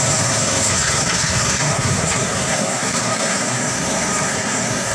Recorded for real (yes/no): no